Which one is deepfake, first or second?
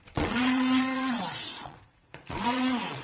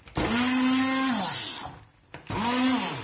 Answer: first